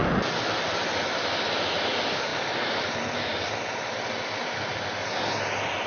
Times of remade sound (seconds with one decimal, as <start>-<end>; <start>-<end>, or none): none